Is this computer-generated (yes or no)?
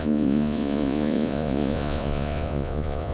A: yes